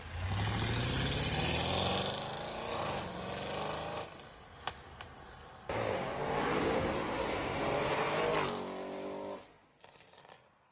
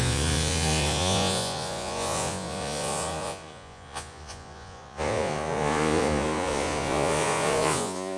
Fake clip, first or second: second